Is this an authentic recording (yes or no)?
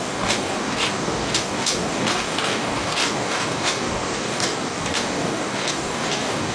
no